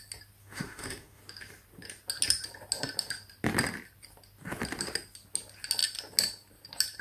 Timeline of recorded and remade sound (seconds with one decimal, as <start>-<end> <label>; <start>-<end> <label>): 0.0-0.4 recorded; 0.4-1.2 remade; 1.2-7.0 recorded